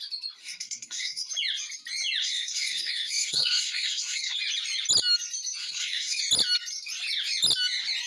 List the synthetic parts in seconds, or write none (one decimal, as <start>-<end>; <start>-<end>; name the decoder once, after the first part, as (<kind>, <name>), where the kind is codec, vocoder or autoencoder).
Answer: 0.4-1.3 (codec, SNAC); 2.2-4.4; 5.6-6.2